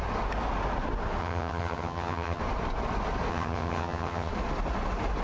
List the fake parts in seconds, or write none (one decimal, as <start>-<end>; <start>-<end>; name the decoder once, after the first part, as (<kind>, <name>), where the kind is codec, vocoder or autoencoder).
1.2-2.4 (vocoder, HiFi-GAN); 3.3-4.3